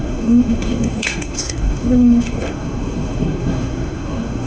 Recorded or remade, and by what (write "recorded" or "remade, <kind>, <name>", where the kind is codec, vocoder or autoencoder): remade, codec, SNAC